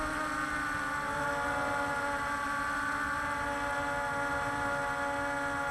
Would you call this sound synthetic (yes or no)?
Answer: no